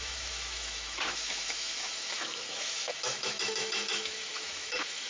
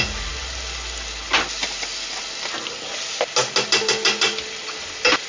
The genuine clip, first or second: second